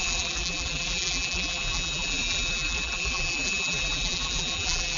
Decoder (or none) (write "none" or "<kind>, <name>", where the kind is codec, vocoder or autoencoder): vocoder, BigVGAN v2